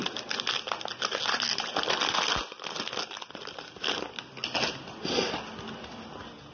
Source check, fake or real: real